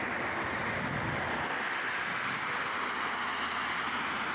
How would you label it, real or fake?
real